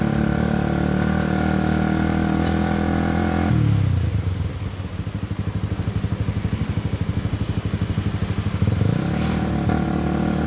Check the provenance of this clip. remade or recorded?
recorded